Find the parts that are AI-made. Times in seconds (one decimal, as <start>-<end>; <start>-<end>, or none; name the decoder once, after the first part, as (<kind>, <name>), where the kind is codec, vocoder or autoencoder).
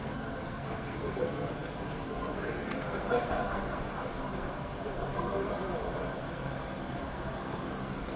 0.0-5.5 (codec, SNAC); 6.2-8.2